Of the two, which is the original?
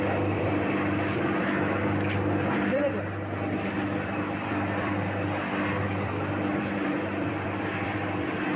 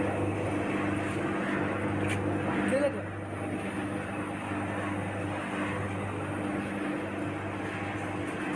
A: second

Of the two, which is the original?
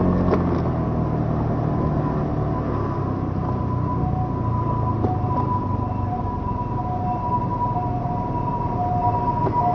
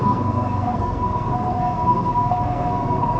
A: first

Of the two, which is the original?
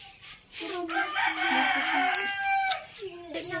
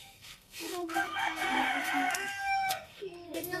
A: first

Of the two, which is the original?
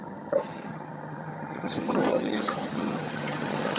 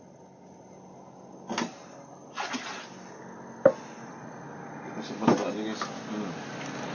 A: second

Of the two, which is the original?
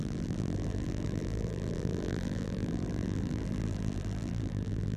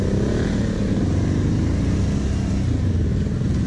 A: second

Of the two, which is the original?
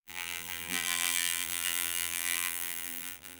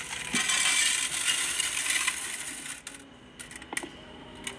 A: second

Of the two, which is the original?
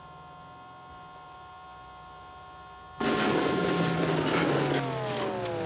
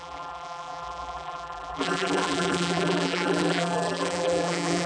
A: first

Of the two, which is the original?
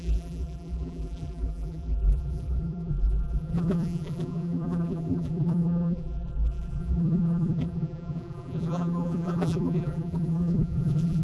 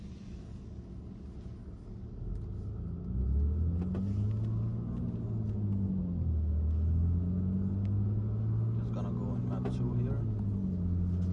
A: second